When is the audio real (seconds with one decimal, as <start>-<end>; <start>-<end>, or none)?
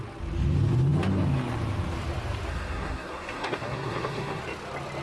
0.0-2.5; 4.4-5.0